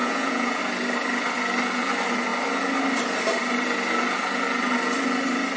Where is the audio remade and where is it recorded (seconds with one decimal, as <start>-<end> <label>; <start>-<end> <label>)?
0.0-0.6 remade; 0.6-5.6 recorded